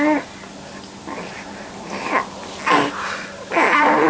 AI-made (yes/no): no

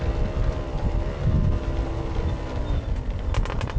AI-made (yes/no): no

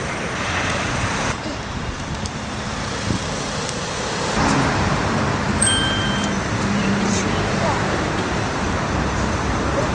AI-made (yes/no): yes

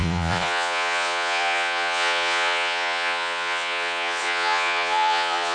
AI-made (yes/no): yes